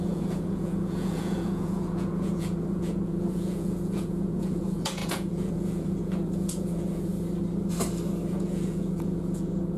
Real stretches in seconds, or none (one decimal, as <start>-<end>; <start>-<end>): 7.1-8.3